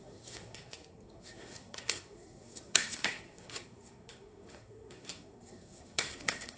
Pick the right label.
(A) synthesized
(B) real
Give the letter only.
A